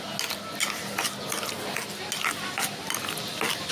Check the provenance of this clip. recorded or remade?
recorded